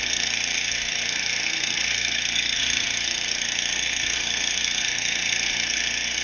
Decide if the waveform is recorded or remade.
remade